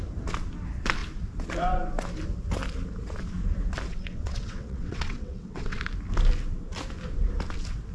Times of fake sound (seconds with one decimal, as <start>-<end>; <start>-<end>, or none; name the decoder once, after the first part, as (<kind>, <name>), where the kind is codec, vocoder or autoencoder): 3.9-5.8 (vocoder, WaveNeXt)